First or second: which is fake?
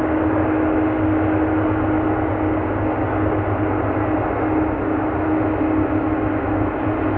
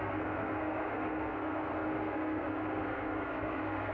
second